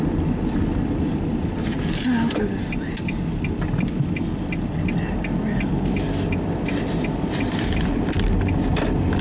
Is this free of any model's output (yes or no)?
yes